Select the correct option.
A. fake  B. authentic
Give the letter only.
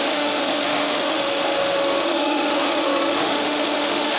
A